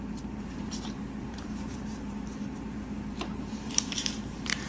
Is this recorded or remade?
remade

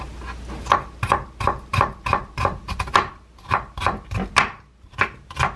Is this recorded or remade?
recorded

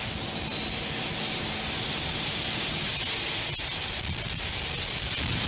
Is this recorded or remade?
recorded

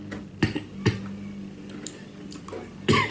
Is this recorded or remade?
recorded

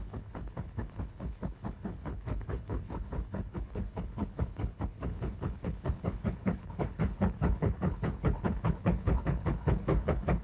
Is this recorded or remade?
remade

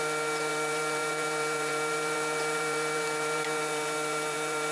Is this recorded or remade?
remade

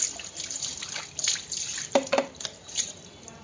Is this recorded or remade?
recorded